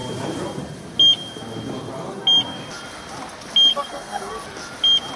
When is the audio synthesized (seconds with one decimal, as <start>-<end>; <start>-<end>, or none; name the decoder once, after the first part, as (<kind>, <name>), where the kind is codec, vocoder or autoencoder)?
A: 3.7-4.3 (codec, SNAC)